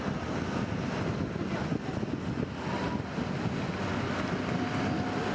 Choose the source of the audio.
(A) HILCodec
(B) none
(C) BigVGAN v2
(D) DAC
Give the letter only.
B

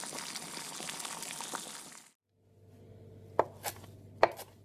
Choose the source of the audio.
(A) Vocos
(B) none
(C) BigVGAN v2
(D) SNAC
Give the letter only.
B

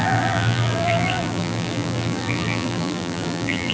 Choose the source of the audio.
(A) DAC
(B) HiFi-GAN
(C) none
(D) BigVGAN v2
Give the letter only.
D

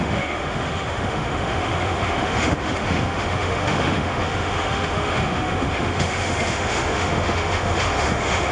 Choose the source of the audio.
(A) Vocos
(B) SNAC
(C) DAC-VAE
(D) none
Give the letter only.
C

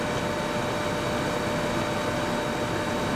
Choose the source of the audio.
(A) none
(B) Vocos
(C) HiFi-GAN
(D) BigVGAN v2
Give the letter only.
A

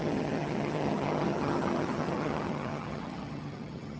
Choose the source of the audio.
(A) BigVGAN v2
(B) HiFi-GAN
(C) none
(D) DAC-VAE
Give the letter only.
B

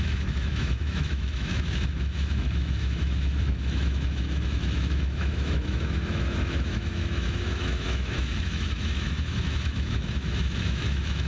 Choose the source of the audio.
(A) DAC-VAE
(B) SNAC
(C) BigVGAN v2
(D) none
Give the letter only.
A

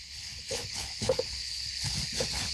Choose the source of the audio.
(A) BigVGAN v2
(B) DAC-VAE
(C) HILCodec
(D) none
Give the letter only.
C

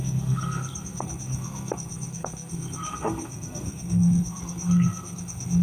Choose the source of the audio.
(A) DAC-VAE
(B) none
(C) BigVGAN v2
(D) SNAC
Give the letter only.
D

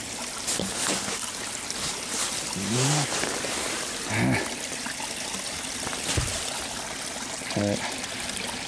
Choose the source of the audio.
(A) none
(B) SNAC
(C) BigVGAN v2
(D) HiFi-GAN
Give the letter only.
A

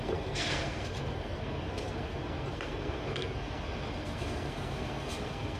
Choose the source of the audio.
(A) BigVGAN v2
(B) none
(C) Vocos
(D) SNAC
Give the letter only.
D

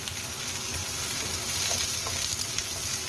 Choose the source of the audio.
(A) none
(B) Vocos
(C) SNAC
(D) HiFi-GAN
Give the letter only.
A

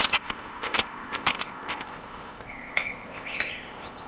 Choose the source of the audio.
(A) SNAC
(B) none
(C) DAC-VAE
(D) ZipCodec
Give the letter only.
D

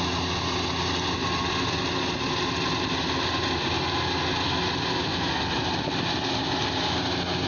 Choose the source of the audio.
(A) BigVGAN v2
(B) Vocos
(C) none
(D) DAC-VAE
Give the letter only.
C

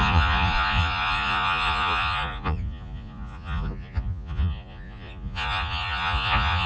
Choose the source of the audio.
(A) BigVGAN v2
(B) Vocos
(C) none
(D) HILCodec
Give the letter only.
B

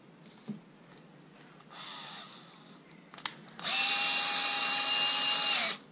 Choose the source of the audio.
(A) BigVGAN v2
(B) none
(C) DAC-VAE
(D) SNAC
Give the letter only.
B